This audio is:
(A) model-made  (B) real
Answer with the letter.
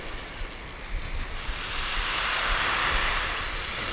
B